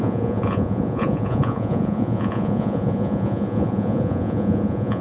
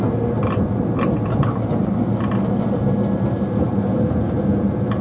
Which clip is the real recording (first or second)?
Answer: second